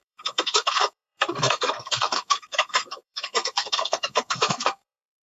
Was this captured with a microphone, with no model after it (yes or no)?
no